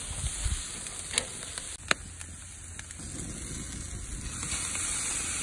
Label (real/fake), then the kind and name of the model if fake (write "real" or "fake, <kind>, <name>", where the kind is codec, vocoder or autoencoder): real